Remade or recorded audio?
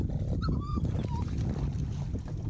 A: recorded